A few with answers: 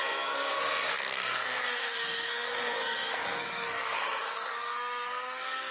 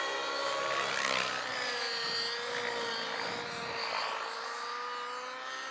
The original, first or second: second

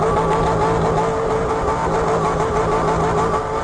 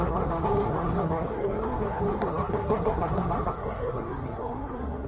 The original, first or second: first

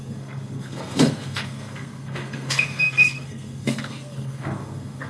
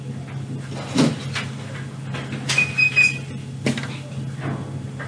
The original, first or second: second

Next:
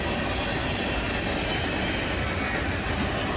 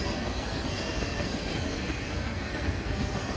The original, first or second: first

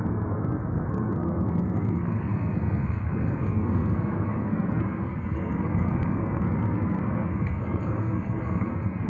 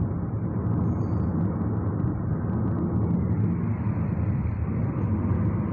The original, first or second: second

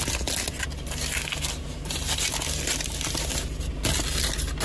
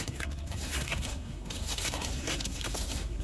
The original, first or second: first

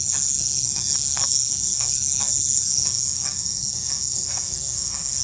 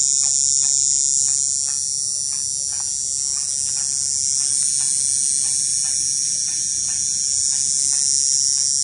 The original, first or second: second